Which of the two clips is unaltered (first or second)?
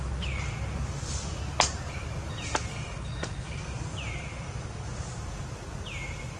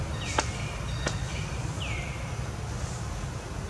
second